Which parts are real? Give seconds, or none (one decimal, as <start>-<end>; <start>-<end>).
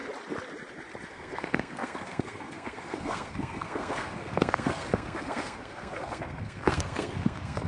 0.0-1.1